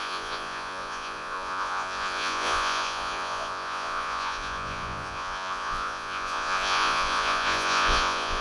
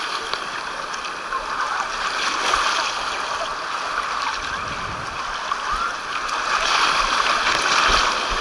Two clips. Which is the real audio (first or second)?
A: second